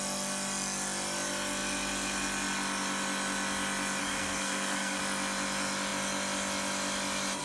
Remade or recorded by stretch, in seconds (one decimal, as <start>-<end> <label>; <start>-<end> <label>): 0.0-4.0 recorded; 4.0-5.0 remade; 5.0-7.4 recorded